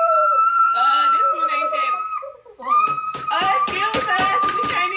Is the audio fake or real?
fake